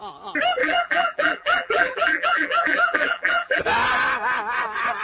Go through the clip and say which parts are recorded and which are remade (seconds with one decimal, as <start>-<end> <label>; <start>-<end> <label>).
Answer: 0.0-0.6 recorded; 0.6-3.6 remade; 3.6-5.0 recorded